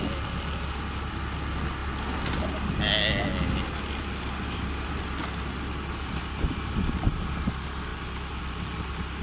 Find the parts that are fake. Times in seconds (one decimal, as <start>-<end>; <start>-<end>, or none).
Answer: 7.9-8.6